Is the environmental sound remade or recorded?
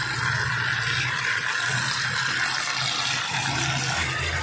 recorded